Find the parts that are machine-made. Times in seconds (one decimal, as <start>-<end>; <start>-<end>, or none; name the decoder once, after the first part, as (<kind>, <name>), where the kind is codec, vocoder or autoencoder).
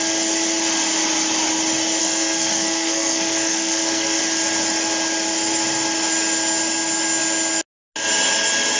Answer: 2.0-4.2 (codec, SNAC)